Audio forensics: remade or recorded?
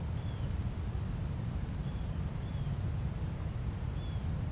recorded